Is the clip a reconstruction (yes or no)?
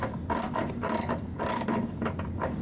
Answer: no